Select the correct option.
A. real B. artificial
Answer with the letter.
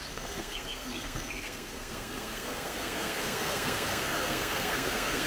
B